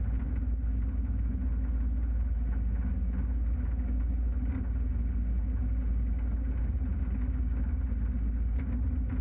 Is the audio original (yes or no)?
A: yes